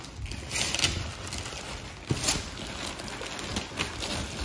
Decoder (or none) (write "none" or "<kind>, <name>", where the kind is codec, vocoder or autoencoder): none